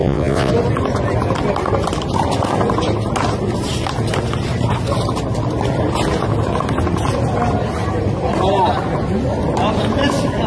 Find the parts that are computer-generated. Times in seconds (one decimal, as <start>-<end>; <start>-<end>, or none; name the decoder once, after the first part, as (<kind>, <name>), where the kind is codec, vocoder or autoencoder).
0.0-0.5 (vocoder, WaveNeXt)